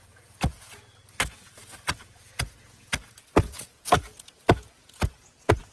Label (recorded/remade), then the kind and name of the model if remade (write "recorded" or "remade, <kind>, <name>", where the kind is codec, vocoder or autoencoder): remade, vocoder, Vocos